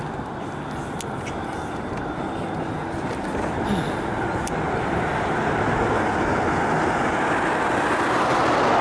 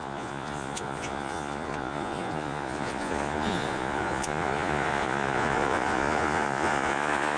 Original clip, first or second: first